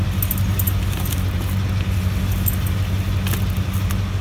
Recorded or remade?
recorded